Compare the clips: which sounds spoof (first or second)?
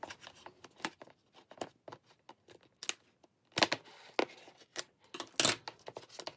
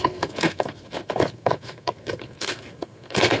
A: second